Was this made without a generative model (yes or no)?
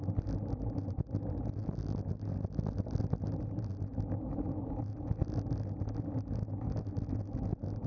yes